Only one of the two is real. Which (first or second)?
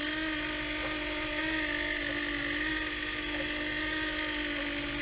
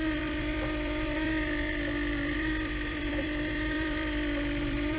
first